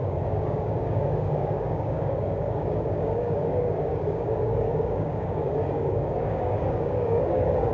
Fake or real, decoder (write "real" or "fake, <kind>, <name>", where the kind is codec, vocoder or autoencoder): fake, codec, DAC